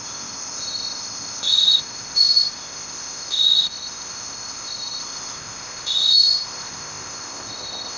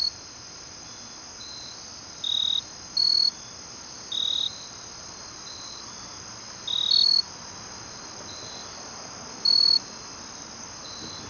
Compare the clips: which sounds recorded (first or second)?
second